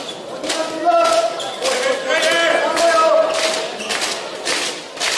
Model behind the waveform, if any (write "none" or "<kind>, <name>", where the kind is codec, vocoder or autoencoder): none